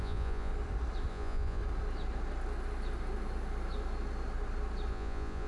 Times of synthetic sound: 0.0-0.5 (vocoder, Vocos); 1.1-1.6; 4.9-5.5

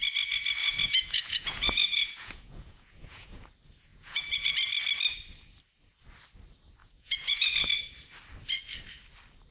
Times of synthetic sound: 0.6-3.4 (vocoder, Vocos); 3.9-4.5; 6.8-7.7

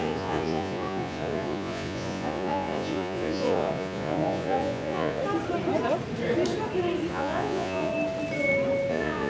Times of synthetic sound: 0.0-5.2 (vocoder, Vocos); 7.1-7.9; 8.9-9.3

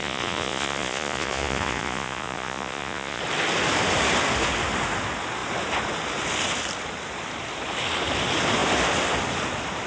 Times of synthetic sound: 0.0-3.2 (vocoder, Vocos)

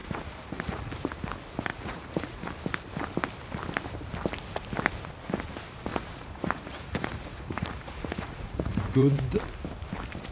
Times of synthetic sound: 0.0-0.9 (vocoder, Vocos); 1.7-2.5; 5.9-9.2

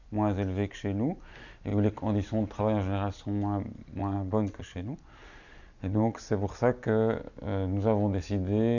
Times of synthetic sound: 4.0-6.2 (vocoder, Vocos)